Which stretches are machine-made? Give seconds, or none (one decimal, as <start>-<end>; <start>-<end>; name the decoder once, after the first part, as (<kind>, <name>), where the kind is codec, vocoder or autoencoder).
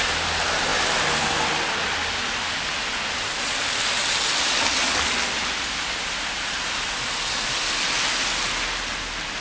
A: none